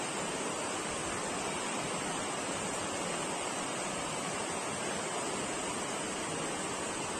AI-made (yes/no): no